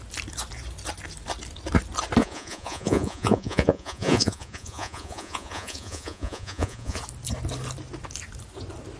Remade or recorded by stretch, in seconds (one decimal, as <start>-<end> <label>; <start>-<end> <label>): 0.0-2.2 recorded; 2.2-7.0 remade; 7.0-9.0 recorded